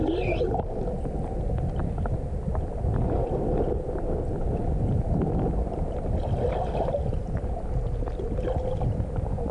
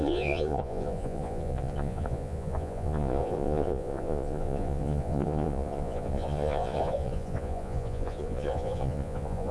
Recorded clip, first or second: first